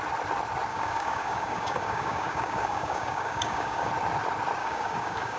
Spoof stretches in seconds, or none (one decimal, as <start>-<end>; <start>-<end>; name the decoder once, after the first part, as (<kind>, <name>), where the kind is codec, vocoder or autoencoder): 0.7-3.9 (codec, DAC); 4.6-5.4